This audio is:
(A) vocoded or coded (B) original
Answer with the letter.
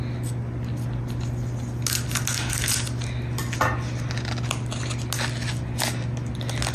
B